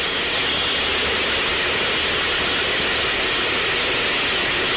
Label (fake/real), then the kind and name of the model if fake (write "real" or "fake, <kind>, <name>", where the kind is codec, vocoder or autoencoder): real